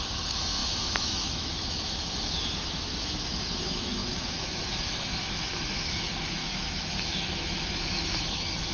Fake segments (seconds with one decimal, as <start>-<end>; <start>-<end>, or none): 0.0-8.7